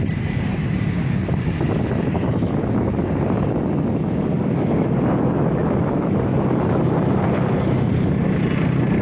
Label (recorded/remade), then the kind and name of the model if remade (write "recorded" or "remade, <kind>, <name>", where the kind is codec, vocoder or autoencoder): recorded